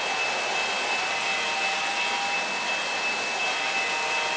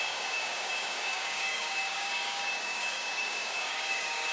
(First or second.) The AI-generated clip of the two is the second